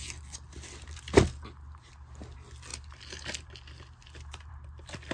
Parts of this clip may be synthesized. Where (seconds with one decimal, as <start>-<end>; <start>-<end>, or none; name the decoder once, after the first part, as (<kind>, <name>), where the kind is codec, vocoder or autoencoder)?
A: none